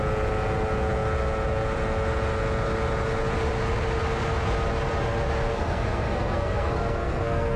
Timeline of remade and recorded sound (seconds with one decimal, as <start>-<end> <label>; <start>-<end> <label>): 0.0-5.5 recorded; 5.5-7.6 remade